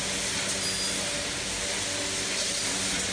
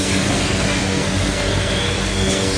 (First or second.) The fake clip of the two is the second